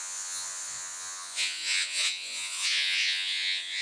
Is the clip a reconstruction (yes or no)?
yes